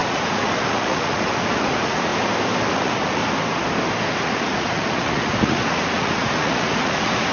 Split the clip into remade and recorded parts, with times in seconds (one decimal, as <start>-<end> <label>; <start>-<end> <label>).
0.0-2.1 remade; 2.1-2.7 recorded; 2.7-3.2 remade; 3.2-4.2 recorded; 4.2-7.3 remade